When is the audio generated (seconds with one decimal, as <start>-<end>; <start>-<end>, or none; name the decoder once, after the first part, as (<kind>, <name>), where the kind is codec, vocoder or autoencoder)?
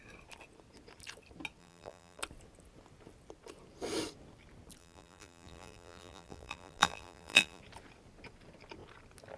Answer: 1.6-2.2 (vocoder, BigVGAN v2); 4.8-7.6